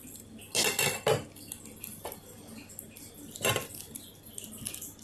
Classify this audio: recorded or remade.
recorded